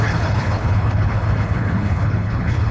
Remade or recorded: remade